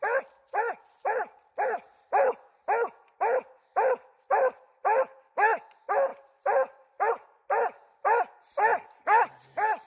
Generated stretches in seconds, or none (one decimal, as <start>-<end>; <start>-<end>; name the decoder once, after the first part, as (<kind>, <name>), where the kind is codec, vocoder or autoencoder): none